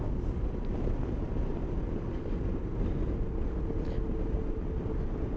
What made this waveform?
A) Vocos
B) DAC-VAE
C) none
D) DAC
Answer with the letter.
C